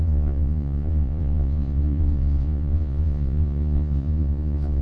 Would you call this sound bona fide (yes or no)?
no